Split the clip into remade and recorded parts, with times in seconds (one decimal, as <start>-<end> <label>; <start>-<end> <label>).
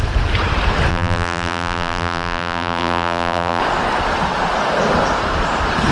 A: 0.0-0.9 recorded; 0.9-3.6 remade; 3.6-5.9 recorded